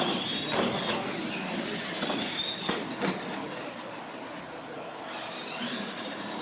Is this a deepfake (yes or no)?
no